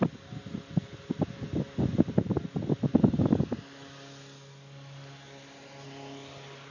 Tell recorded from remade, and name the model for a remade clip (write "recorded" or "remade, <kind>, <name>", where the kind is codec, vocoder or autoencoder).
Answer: recorded